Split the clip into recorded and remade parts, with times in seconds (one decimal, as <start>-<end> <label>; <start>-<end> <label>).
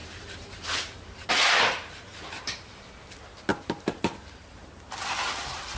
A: 0.0-2.8 remade; 2.8-3.5 recorded; 3.5-4.6 remade; 4.6-5.8 recorded